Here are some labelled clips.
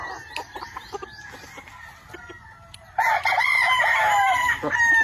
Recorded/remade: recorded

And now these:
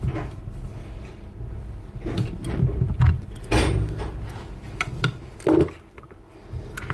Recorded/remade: remade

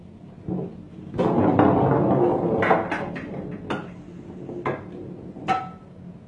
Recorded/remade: recorded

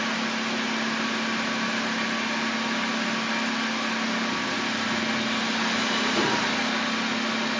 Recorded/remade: recorded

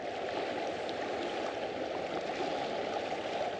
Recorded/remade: recorded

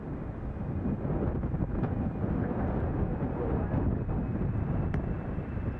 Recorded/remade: recorded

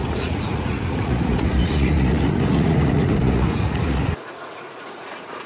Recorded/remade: remade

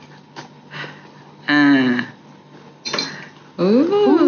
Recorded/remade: recorded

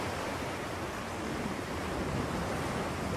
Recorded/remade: recorded